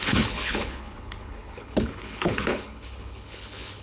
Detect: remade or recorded remade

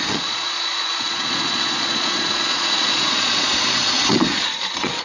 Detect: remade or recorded remade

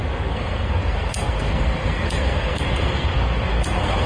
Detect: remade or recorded remade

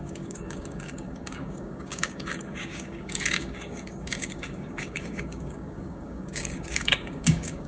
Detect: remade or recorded remade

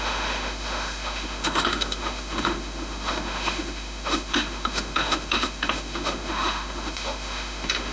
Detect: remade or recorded remade